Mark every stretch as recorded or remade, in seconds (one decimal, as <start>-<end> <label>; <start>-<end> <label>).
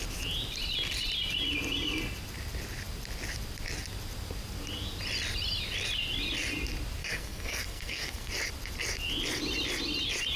0.0-7.0 recorded; 7.0-8.3 remade; 8.3-10.4 recorded